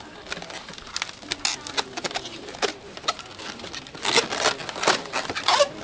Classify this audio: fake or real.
real